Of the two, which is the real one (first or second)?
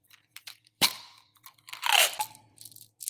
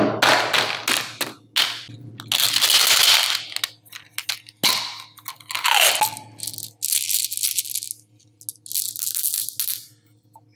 second